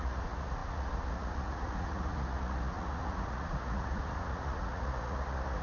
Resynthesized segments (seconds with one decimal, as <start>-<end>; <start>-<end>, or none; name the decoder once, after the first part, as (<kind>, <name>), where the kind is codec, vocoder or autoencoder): 0.0-5.6 (vocoder, Vocos)